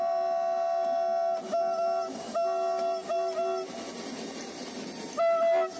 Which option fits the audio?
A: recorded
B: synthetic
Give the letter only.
A